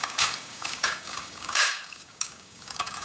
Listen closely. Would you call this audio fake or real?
fake